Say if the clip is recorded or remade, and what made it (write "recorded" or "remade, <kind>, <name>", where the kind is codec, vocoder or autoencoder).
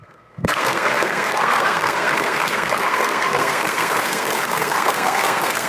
remade, codec, SNAC